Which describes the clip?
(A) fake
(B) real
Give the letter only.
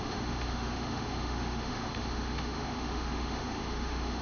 A